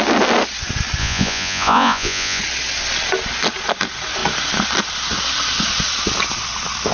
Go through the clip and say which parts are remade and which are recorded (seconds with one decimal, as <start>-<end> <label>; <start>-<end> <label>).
0.0-1.0 recorded; 1.0-2.4 remade; 2.4-6.9 recorded